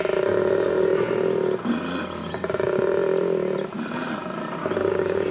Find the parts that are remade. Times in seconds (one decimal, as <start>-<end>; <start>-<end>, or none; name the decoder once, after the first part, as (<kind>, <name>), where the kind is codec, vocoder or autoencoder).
4.6-5.3 (codec, DAC)